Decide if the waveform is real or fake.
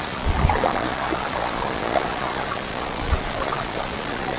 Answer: fake